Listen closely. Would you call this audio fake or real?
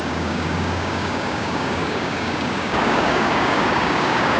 fake